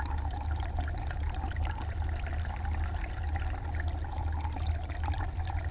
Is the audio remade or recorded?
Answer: recorded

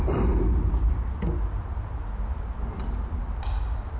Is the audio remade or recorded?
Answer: recorded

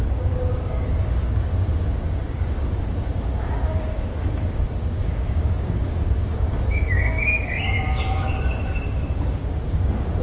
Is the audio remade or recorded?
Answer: remade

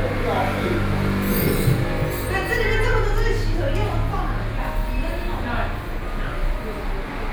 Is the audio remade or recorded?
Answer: recorded